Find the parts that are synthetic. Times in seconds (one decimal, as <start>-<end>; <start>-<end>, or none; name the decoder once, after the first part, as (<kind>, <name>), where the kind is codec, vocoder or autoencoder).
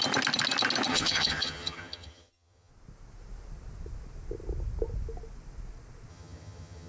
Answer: 0.9-2.7 (vocoder, HiFi-GAN); 6.1-6.9